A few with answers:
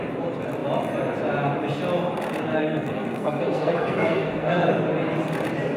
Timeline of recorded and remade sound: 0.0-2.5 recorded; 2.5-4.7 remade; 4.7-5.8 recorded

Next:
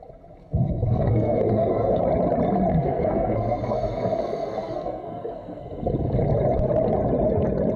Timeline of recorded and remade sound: 0.0-0.4 recorded; 0.4-2.0 remade; 2.0-2.7 recorded; 2.7-5.9 remade; 5.9-7.8 recorded

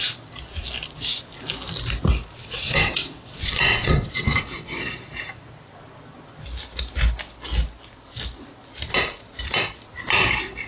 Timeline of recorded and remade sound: 0.0-2.4 recorded; 2.4-4.8 remade; 4.8-10.7 recorded

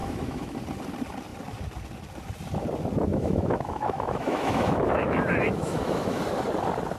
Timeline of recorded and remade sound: 0.0-0.6 remade; 0.6-3.1 recorded; 3.1-6.2 remade; 6.2-7.0 recorded

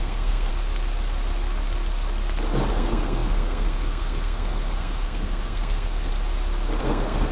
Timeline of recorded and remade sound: 0.0-0.5 remade; 0.5-2.7 recorded; 2.7-6.1 remade; 6.1-6.8 recorded; 6.8-7.3 remade